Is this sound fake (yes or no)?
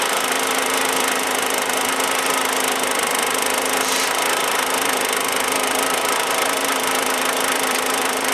yes